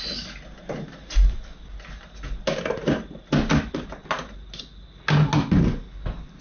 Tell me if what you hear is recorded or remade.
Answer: recorded